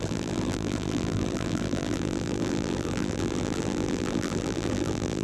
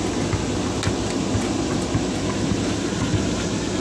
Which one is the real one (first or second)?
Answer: second